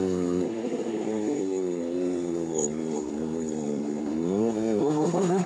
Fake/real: fake